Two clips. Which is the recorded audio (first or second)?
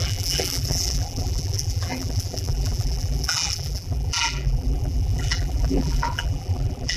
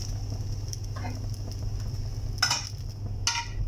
second